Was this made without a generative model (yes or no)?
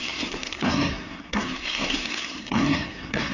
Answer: no